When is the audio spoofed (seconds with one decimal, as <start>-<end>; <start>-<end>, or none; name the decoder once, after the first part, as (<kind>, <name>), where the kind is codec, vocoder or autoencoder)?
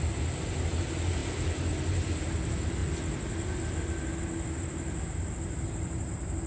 none